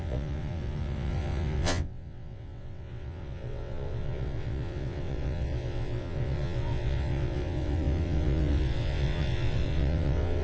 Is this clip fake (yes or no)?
yes